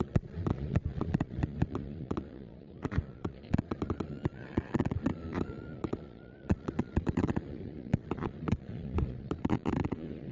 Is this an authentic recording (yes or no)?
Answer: no